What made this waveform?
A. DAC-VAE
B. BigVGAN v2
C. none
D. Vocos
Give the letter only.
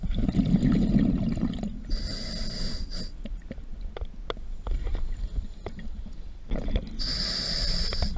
C